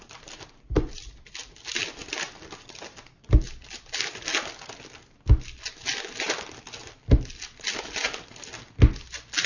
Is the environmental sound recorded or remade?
recorded